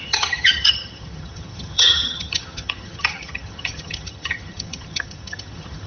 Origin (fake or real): fake